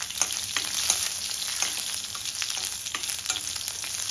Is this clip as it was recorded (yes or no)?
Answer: yes